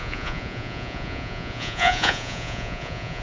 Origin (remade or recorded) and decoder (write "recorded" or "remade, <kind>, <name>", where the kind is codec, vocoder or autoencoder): remade, vocoder, Vocos